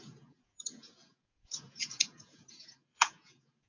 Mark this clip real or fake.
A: fake